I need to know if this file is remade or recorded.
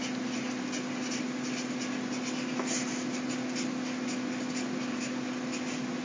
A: recorded